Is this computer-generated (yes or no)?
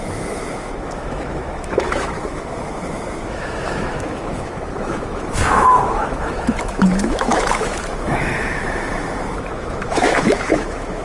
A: yes